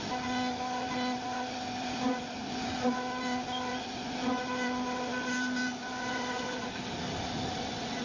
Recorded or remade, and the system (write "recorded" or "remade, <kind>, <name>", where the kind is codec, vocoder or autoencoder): recorded